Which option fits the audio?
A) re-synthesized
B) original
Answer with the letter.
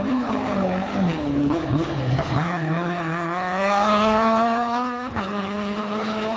A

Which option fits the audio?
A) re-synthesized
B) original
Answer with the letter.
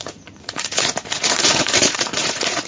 A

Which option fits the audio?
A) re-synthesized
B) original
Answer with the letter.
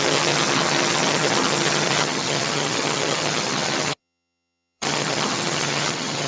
A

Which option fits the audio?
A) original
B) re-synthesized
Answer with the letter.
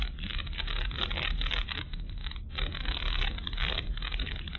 A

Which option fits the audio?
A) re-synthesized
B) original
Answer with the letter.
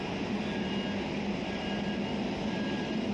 B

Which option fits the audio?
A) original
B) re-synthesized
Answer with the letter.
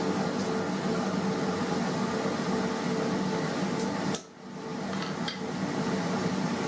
A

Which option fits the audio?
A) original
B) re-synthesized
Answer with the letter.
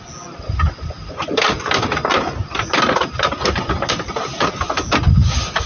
A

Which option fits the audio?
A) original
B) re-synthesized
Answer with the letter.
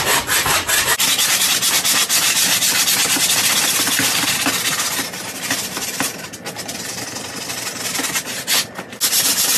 A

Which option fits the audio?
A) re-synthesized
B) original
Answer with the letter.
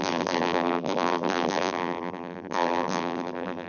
A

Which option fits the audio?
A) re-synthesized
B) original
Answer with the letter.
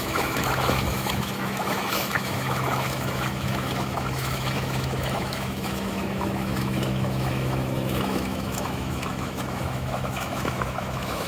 A